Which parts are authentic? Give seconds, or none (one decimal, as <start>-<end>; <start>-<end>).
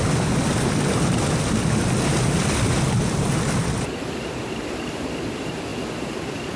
0.0-6.6